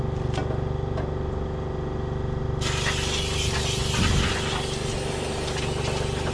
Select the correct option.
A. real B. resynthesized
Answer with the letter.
A